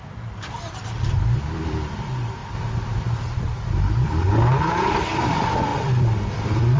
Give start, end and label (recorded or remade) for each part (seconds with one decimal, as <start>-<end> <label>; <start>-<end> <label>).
0.0-6.8 remade